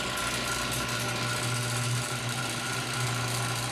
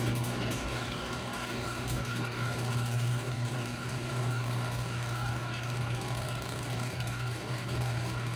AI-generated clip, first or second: second